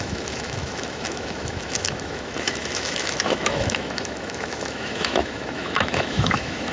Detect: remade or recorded remade